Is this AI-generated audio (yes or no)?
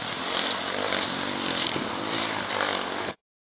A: no